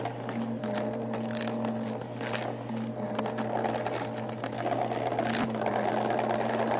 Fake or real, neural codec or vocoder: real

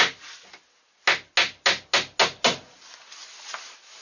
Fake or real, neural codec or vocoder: real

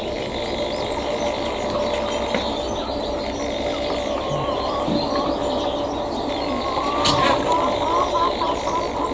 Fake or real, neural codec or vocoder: real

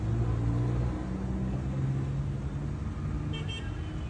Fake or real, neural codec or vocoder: real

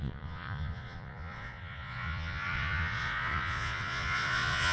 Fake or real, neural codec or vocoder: fake, vocoder, Vocos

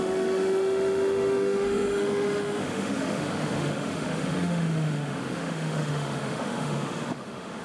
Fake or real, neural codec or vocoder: fake, autoencoder, DAC-VAE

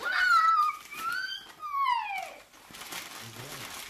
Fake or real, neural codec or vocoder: real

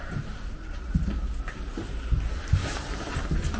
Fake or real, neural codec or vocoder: real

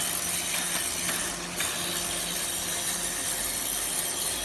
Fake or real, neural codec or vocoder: real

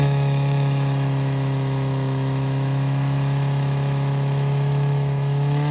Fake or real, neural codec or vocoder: fake, autoencoder, DAC-VAE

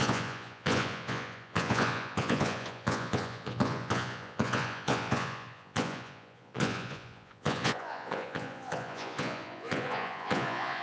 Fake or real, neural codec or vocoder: fake, vocoder, Vocos